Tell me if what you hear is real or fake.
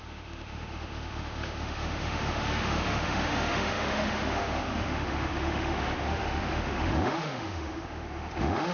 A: fake